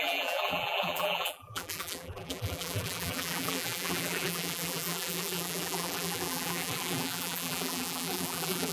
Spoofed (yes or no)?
yes